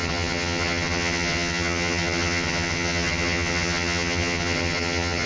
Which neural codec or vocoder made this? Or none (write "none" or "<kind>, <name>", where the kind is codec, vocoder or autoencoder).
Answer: vocoder, HiFi-GAN